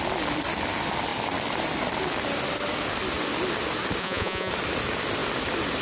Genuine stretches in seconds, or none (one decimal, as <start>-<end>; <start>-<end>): 0.0-4.0; 4.5-5.8